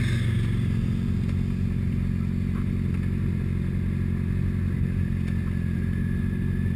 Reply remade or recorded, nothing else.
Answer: recorded